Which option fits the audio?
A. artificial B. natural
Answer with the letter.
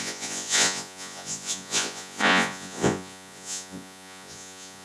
A